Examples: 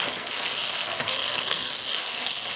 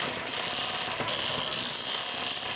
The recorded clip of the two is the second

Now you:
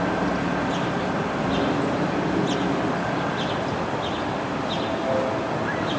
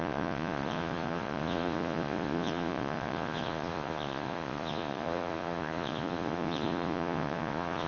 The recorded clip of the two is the first